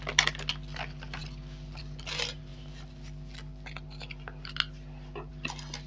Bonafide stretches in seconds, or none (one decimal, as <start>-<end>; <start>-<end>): 0.0-5.9